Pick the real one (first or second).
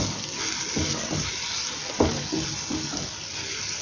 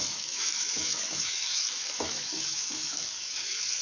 first